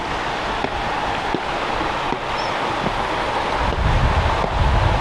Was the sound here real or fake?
real